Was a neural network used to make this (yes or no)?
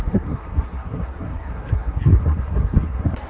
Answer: yes